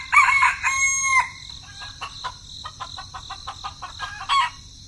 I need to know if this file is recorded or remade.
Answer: recorded